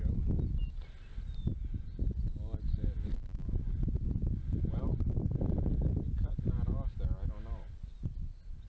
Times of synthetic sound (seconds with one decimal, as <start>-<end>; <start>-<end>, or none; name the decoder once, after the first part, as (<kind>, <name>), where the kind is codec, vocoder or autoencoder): 1.1-6.3 (vocoder, BigVGAN v2)